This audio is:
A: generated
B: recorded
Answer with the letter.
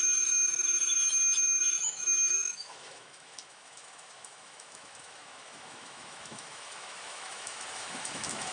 A